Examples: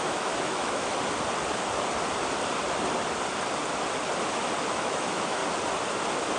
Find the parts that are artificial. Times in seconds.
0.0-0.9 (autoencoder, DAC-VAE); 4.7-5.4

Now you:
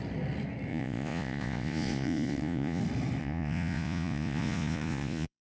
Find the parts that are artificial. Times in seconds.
0.7-2.8 (vocoder, Vocos); 3.2-5.4

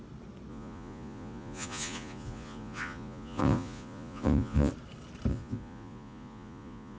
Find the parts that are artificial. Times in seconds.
0.5-4.7 (vocoder, Vocos); 5.3-7.0